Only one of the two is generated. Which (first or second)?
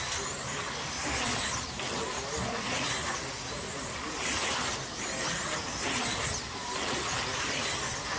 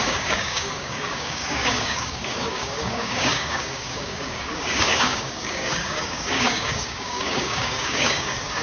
second